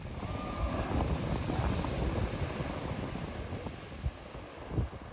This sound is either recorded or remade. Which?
recorded